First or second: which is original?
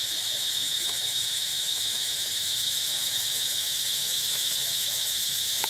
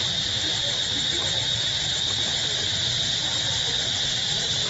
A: second